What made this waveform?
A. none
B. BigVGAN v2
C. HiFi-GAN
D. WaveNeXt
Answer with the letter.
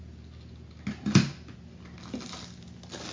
A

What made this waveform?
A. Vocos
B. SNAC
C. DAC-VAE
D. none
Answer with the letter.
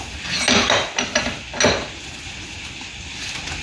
D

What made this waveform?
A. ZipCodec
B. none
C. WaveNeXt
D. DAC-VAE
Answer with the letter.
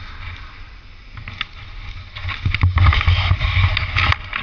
B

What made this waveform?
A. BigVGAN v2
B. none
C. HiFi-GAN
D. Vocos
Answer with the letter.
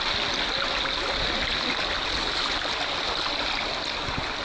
B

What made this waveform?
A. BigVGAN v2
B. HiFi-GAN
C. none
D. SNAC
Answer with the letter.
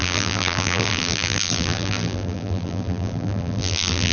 A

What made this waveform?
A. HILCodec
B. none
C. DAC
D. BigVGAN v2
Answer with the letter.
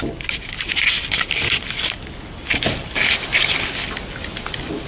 B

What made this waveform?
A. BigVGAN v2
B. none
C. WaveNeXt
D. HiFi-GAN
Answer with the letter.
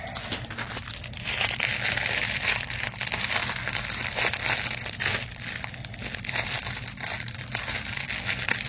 B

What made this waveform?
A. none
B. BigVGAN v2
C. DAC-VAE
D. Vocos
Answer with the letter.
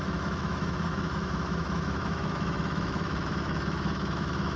C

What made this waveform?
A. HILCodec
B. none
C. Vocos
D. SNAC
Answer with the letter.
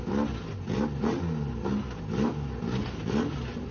B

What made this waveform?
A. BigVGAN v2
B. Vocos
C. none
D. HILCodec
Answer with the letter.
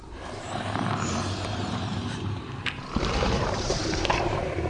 A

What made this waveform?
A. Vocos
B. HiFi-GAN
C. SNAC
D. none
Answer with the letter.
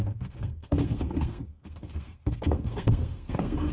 C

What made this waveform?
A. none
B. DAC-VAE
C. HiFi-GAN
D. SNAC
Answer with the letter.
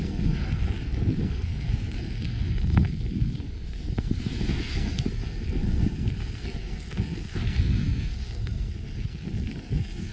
D